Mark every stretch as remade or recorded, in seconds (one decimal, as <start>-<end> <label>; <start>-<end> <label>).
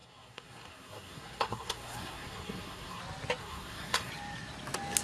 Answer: 0.0-3.0 remade; 3.0-3.4 recorded; 3.4-4.1 remade; 4.1-5.0 recorded